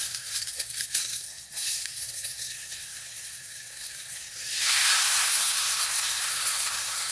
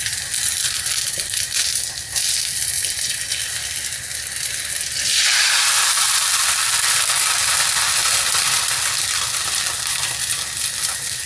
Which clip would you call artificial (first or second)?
first